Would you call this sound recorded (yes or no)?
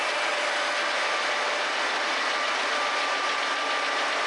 yes